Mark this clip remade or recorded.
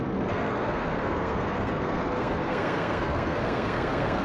remade